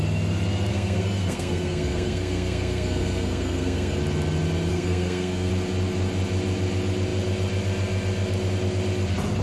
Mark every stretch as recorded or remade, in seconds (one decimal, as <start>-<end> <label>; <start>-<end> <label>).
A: 0.0-0.7 recorded; 0.7-4.0 remade; 4.0-4.7 recorded; 4.7-5.5 remade; 5.5-9.4 recorded